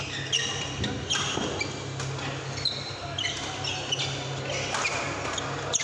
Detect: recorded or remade recorded